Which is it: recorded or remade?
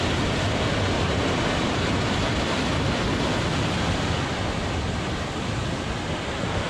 recorded